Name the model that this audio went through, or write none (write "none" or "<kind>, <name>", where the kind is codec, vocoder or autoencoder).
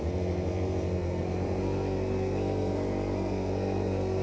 codec, SNAC